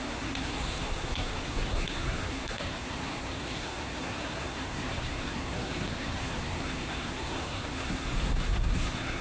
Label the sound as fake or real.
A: fake